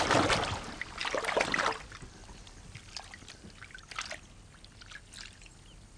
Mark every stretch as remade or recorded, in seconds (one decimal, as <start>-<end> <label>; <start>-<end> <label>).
0.0-6.0 recorded